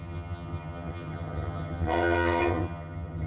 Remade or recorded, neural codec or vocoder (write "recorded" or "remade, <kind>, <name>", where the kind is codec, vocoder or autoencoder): remade, vocoder, HiFi-GAN